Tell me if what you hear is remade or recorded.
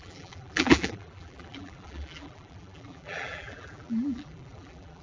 remade